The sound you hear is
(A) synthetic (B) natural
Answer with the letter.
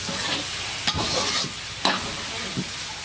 B